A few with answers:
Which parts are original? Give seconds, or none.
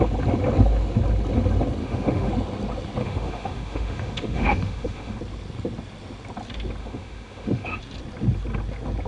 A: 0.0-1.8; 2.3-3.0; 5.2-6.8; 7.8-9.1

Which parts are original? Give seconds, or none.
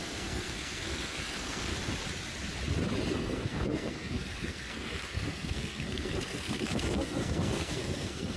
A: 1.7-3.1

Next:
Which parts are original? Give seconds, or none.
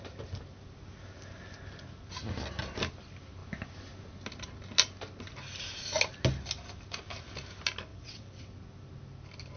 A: 0.0-7.9; 8.5-9.6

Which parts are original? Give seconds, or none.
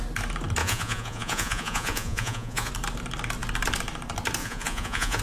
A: 0.0-0.6; 2.7-4.4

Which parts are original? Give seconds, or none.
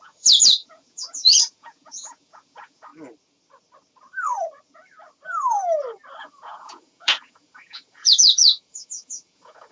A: 2.9-6.2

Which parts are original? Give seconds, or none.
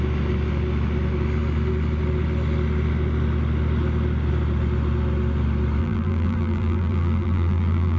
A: 0.0-5.8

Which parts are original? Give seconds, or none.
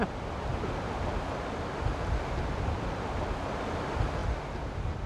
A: 0.0-5.1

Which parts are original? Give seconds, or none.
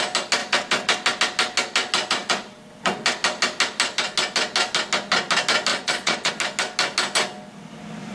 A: 0.0-5.7; 6.3-8.1